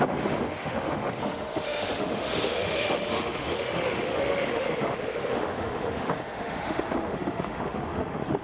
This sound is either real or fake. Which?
fake